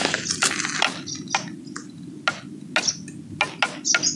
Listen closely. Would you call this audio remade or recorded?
recorded